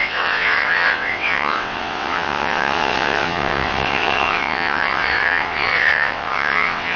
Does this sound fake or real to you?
fake